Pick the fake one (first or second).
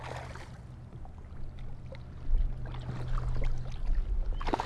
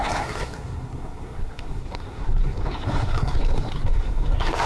second